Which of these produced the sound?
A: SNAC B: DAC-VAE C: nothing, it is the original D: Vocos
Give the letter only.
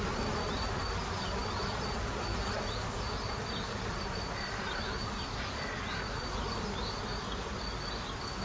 C